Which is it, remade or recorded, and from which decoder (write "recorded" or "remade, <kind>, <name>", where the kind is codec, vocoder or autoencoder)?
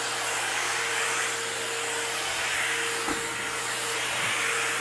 recorded